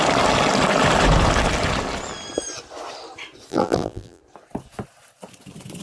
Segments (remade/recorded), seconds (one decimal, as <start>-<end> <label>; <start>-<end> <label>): 0.0-3.5 recorded; 3.5-4.2 remade; 4.2-5.8 recorded